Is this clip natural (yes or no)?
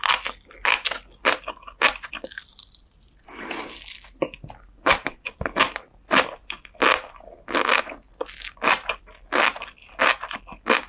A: yes